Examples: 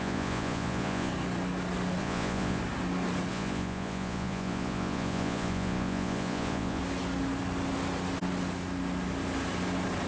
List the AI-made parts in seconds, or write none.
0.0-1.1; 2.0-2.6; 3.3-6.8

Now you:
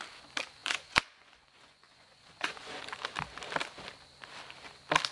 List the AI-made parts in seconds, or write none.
0.6-2.8

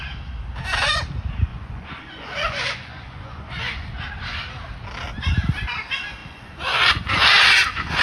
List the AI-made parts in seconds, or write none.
1.5-3.9; 6.2-8.0

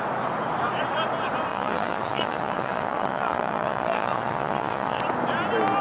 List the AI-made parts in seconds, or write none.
1.5-5.0

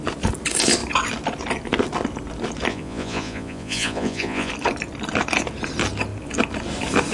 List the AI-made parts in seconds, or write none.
2.7-4.5

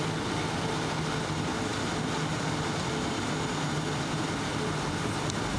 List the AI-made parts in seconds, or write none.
none

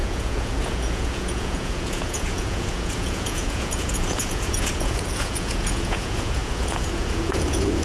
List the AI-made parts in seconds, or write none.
0.0-7.8